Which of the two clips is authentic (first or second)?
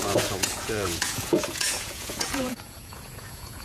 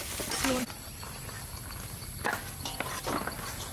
second